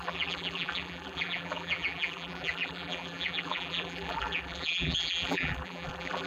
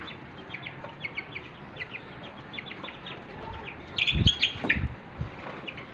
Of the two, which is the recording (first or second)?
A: second